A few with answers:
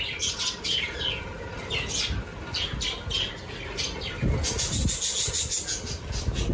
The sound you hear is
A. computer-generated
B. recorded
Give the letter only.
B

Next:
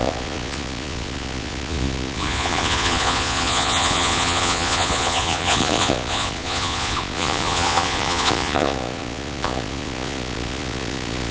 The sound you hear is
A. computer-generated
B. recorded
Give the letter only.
A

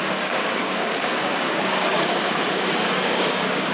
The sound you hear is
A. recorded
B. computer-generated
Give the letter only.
B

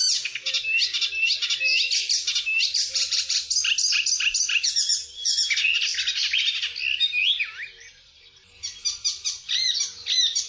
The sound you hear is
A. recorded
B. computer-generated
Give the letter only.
A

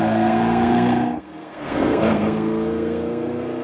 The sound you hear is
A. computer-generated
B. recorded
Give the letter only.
A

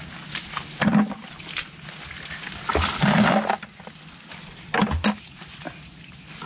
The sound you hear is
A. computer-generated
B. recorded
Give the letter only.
B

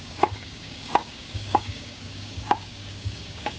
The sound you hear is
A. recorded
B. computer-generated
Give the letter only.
B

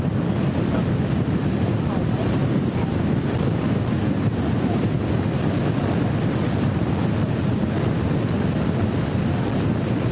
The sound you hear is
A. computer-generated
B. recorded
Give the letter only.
B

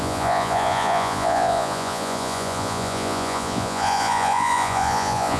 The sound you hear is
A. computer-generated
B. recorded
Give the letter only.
A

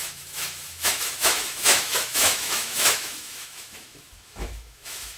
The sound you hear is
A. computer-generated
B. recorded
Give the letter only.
A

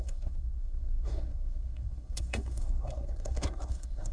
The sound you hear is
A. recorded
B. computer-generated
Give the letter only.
B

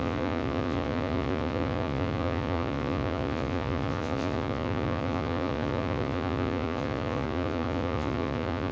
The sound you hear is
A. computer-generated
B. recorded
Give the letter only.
A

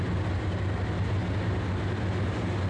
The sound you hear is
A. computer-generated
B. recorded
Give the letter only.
B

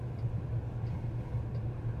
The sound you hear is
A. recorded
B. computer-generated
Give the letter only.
A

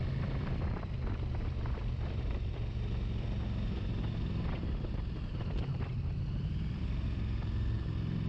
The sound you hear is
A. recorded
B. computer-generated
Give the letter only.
B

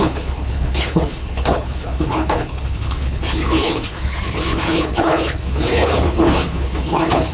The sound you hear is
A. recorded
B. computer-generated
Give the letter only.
B